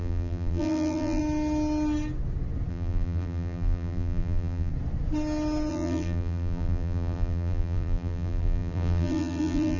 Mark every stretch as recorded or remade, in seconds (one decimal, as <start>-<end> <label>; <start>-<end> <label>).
0.0-1.2 remade; 1.2-2.7 recorded; 2.7-4.7 remade; 4.7-5.7 recorded; 5.7-9.8 remade